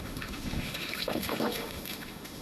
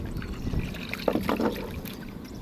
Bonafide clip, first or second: second